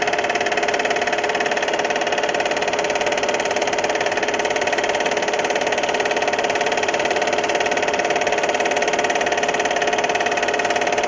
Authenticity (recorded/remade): recorded